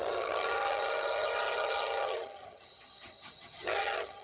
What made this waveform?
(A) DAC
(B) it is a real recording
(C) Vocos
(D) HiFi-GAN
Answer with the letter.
D